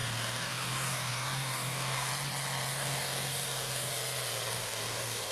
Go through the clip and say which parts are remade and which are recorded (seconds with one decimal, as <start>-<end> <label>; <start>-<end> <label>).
0.0-2.1 remade; 2.1-2.7 recorded; 2.7-3.9 remade; 3.9-4.5 recorded; 4.5-5.3 remade

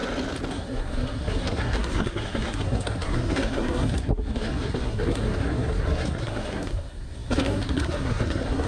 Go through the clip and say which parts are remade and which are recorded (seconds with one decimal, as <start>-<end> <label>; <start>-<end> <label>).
0.0-0.5 recorded; 0.5-8.7 remade

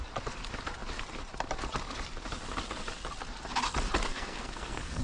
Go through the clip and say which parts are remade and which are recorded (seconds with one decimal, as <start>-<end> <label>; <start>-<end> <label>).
0.0-4.1 recorded; 4.1-5.0 remade

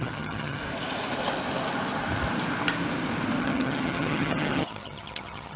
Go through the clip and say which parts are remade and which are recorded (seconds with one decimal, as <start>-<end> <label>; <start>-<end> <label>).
0.0-0.6 remade; 0.6-3.4 recorded; 3.4-5.6 remade

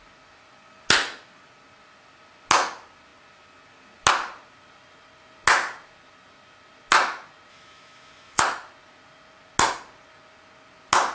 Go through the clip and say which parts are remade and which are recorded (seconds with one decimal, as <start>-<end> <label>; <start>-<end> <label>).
0.0-7.5 recorded; 7.5-8.4 remade; 8.4-11.1 recorded

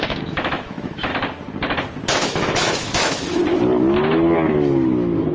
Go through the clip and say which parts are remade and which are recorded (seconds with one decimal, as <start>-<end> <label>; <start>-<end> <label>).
0.0-1.1 remade; 1.1-2.1 recorded; 2.1-3.4 remade; 3.4-4.5 recorded; 4.5-5.3 remade

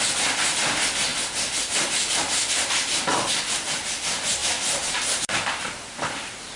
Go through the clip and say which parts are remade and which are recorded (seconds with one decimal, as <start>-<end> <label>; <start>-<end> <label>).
0.0-1.1 recorded; 1.1-2.7 remade; 2.7-4.4 recorded; 4.4-6.6 remade